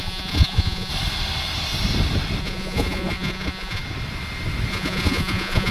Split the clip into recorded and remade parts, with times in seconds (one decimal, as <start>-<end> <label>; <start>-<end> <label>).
0.0-0.9 remade; 0.9-2.4 recorded; 2.4-3.8 remade; 3.8-4.7 recorded; 4.7-5.7 remade